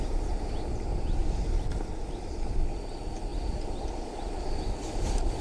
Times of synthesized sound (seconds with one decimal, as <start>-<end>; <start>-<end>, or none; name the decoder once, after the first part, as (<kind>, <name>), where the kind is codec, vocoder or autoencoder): none